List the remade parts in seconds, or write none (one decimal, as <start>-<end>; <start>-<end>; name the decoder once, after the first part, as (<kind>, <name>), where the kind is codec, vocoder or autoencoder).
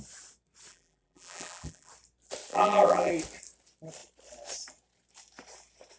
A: 0.7-1.9 (vocoder, BigVGAN v2); 2.5-3.1